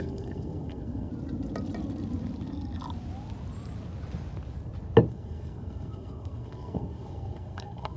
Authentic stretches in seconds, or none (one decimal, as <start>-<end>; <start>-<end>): 1.1-5.1